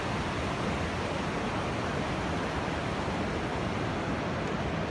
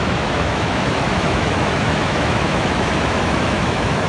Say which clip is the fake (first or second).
second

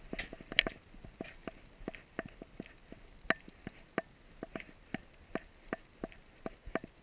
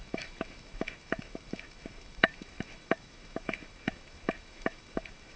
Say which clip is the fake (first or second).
second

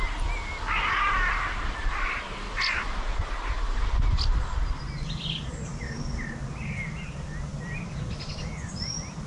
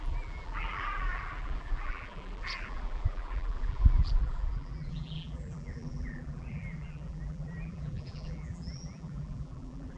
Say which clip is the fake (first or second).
second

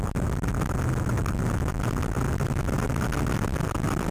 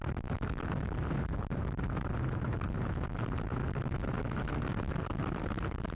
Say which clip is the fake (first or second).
second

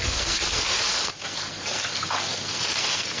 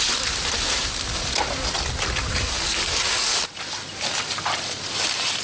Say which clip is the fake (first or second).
first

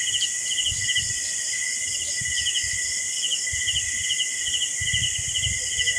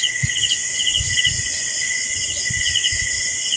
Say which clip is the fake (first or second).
second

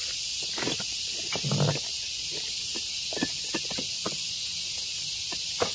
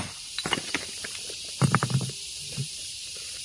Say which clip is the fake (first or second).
second